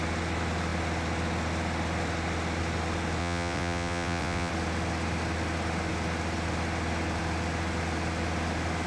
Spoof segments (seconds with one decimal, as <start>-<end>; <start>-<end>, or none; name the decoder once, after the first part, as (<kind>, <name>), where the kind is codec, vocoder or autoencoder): 3.2-4.5 (vocoder, WaveNeXt)